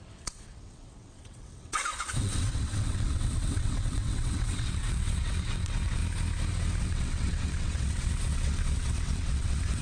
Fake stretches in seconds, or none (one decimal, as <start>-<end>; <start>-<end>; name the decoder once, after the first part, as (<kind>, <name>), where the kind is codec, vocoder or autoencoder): 0.0-6.0 (vocoder, WaveNeXt); 6.8-9.8